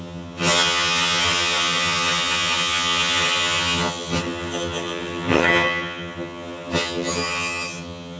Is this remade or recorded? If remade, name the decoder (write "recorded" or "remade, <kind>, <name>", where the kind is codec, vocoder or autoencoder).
remade, vocoder, HiFi-GAN